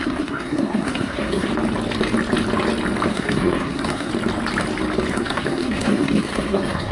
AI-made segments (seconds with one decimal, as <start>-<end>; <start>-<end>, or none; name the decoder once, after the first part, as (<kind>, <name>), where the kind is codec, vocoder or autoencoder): 0.0-1.5 (codec, SNAC); 3.1-4.1; 5.1-6.9